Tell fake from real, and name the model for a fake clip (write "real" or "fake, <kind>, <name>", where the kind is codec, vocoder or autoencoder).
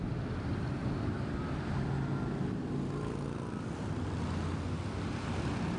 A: real